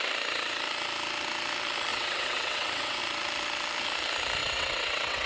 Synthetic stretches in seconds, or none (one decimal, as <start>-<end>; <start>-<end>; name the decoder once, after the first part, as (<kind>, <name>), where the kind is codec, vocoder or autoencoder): 1.9-3.0 (vocoder, WaveNeXt); 4.4-5.3